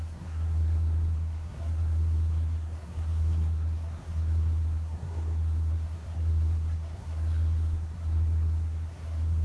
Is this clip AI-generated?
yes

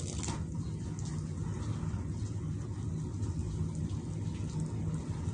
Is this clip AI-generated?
no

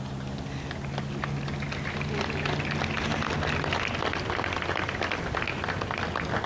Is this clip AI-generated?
no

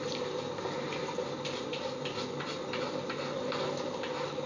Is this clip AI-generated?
no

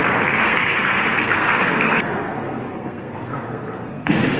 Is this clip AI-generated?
yes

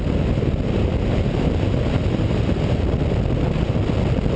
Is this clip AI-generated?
no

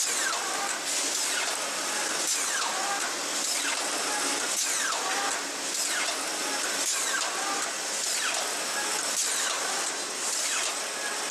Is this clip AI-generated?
no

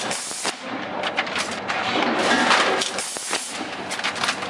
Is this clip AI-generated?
no